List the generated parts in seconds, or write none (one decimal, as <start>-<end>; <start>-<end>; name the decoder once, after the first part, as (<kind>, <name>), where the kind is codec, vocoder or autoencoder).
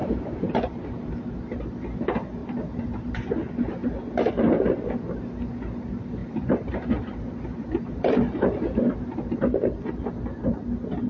0.0-1.1 (vocoder, BigVGAN v2); 2.4-3.3; 6.2-10.1